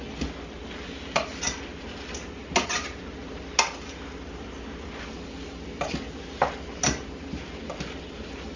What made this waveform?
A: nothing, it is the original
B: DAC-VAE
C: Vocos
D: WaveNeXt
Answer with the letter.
A